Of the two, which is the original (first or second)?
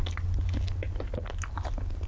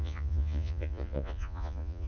first